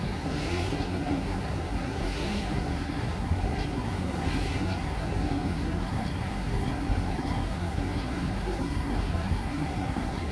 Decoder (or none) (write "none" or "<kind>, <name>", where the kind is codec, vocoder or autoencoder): codec, SNAC